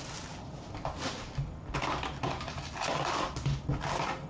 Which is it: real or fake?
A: real